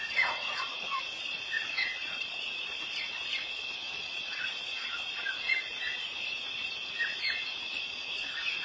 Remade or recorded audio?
remade